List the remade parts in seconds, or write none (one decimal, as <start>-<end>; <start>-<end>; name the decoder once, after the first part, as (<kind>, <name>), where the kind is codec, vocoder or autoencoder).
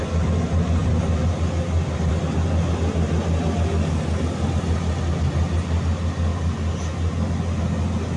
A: none